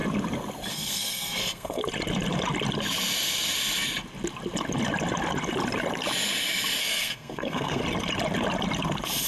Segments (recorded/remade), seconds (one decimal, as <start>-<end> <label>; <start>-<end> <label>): 0.0-0.7 recorded; 0.7-1.8 remade; 1.8-6.8 recorded; 6.8-7.8 remade; 7.8-9.3 recorded